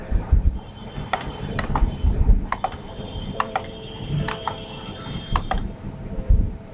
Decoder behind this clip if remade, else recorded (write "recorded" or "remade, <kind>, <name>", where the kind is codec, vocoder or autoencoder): remade, vocoder, BigVGAN v2